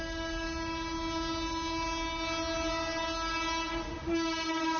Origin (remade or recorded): recorded